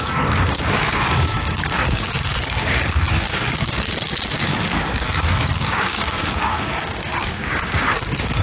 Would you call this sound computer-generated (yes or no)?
yes